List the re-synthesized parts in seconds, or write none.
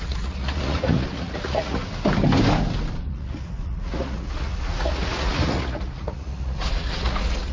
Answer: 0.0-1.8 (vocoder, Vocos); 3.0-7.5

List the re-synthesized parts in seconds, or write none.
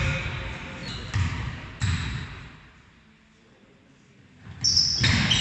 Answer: none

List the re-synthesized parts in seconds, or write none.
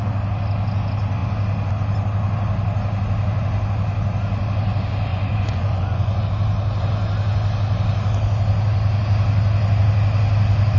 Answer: 5.1-6.2 (vocoder, Vocos)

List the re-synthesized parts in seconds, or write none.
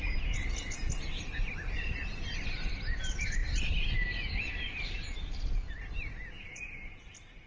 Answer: none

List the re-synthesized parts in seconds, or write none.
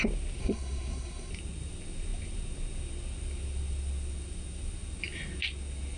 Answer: 0.4-1.3 (codec, SNAC)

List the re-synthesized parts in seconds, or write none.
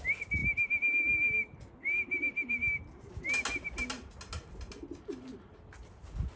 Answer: none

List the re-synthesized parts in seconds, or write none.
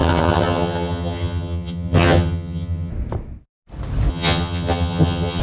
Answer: 0.0-2.9 (vocoder, HiFi-GAN); 4.1-5.4